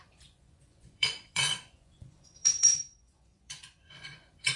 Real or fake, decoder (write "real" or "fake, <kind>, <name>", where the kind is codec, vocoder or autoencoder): fake, vocoder, Vocos